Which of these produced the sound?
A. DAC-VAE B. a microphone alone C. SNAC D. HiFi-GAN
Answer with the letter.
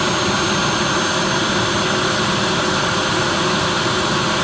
B